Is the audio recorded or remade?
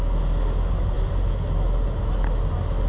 recorded